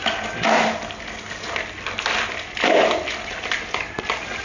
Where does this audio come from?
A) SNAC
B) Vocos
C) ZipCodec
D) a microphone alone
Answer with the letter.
D